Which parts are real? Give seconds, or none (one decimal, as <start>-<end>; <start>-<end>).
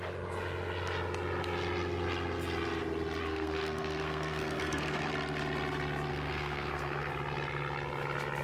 0.0-3.2; 5.1-6.1; 7.1-8.4